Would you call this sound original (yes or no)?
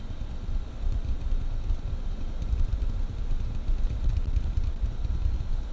yes